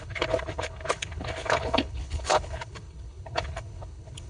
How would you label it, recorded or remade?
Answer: remade